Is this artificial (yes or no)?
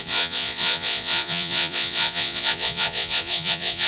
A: yes